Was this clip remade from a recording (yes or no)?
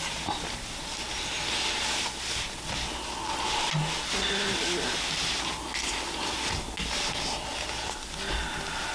no